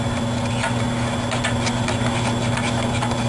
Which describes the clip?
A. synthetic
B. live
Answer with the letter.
B